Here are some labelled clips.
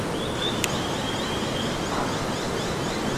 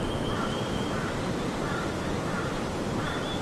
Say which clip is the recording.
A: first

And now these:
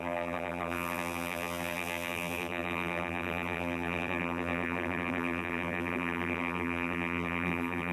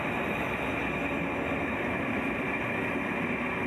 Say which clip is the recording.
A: second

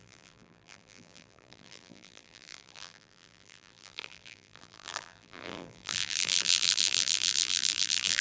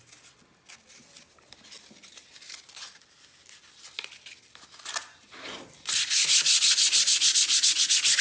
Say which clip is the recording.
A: second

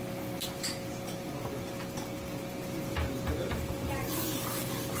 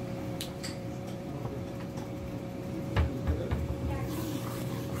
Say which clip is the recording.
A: first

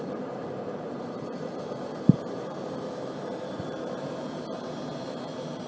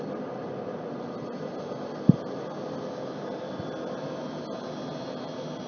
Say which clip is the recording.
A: second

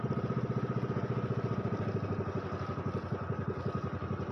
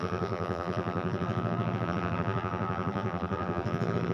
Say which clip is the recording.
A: first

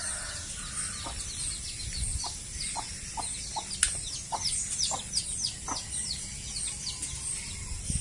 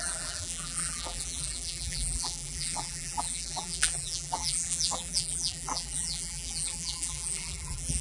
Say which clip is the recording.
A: first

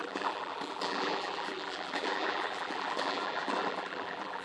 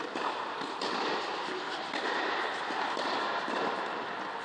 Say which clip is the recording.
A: second